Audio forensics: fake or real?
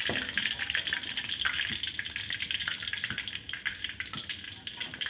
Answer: real